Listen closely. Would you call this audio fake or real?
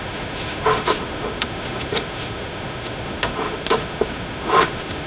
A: fake